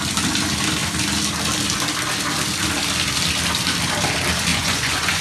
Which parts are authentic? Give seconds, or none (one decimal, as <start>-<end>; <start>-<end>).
0.0-4.5